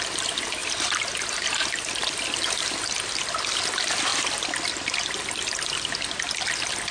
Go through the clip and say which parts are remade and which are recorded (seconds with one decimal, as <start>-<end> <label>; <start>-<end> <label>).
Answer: 0.0-6.9 recorded